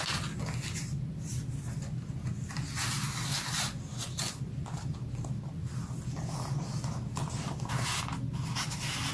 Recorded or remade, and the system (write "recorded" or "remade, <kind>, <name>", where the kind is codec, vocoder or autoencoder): recorded